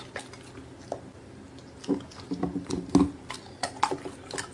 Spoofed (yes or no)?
no